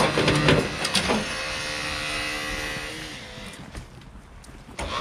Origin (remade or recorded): recorded